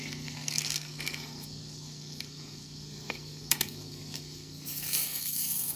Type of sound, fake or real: fake